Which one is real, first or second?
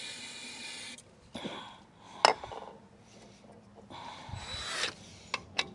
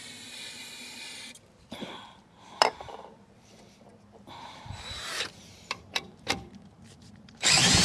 first